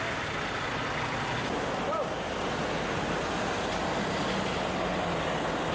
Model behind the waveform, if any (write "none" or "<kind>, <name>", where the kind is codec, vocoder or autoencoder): none